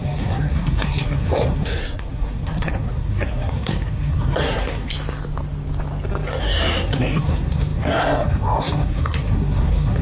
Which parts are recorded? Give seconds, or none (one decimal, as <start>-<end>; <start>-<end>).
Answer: 4.9-6.4

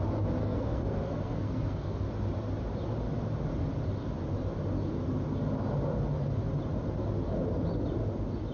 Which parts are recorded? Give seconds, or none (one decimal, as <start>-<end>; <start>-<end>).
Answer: 0.0-0.4; 2.0-8.5